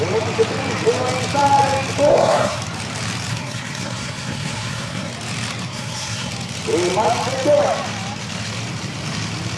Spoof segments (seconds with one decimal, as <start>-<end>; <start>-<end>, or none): 2.1-2.6; 3.3-5.1; 5.7-6.3